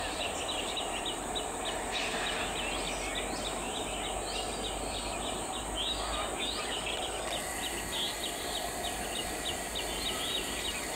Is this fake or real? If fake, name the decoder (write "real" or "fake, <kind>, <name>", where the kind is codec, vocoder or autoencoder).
real